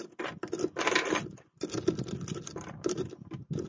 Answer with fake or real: real